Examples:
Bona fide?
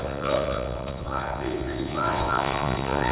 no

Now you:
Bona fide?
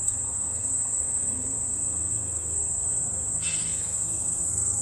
no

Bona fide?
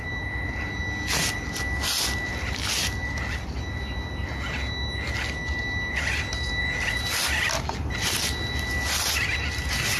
yes